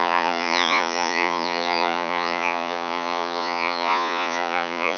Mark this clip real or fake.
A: fake